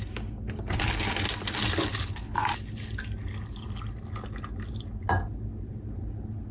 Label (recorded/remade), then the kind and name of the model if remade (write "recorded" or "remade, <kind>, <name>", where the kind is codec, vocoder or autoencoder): recorded